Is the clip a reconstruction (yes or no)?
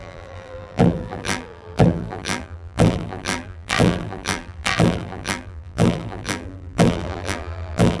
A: yes